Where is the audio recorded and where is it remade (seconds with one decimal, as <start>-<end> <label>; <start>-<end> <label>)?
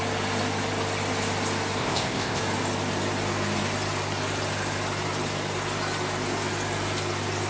0.0-1.8 recorded; 1.8-2.4 remade; 2.4-7.5 recorded